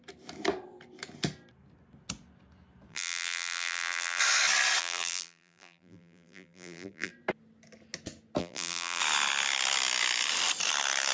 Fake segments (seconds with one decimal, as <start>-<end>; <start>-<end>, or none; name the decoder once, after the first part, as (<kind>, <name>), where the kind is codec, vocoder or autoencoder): 2.9-4.2 (vocoder, BigVGAN v2); 4.8-7.1; 8.4-9.0